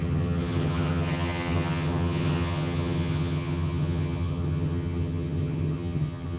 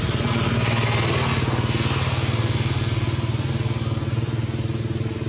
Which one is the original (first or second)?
second